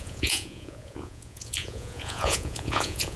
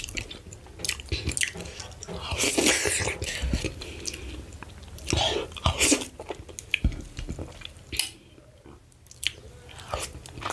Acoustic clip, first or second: second